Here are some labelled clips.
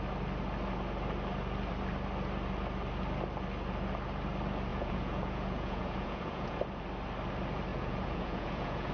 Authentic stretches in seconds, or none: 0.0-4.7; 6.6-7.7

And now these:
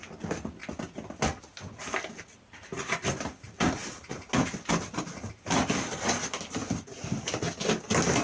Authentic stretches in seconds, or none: 0.0-8.2

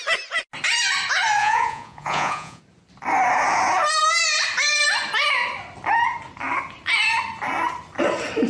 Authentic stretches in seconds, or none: 0.0-1.4; 2.6-8.5

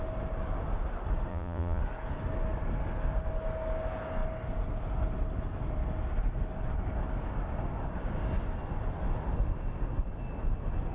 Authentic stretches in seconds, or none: 0.0-1.3; 1.8-10.9

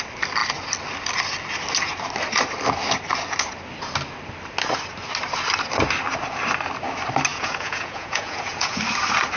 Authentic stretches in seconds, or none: 0.0-7.3; 8.8-9.4

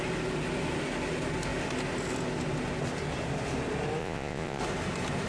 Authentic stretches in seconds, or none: 0.0-4.0; 4.6-5.3

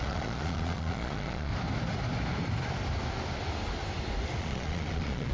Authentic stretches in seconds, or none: 1.5-4.4

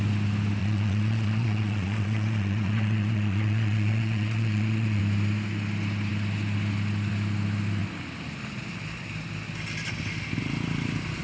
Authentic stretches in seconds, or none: 0.0-0.6; 5.0-11.2